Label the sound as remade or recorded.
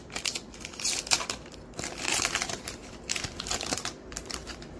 remade